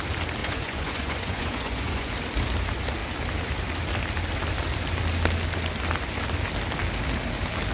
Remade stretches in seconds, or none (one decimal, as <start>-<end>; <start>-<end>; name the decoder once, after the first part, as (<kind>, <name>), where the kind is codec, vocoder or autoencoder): 0.4-2.1 (vocoder, Vocos)